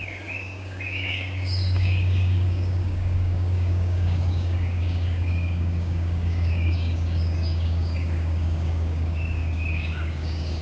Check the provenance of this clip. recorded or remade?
remade